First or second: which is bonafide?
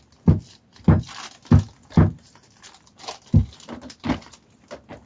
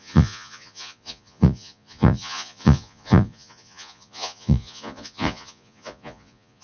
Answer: first